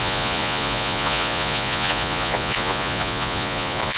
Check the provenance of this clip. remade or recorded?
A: remade